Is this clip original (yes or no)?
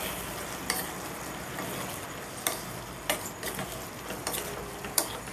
no